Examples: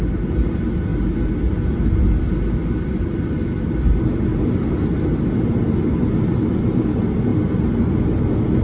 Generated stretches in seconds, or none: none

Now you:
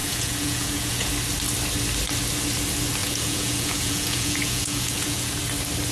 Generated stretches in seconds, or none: 0.0-1.1; 3.0-5.3

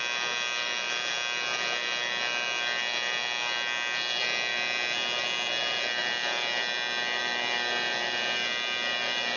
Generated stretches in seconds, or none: none

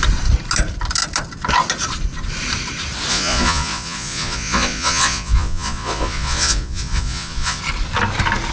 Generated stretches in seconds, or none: 3.1-7.6

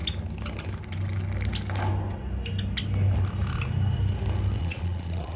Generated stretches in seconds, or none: 4.6-5.4

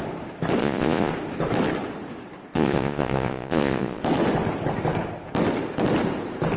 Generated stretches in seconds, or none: 0.6-1.1; 2.5-4.0

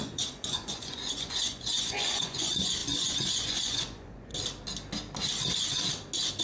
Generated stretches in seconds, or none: 0.0-4.3